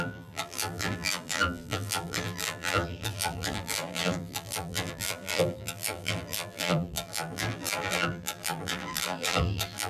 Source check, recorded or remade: remade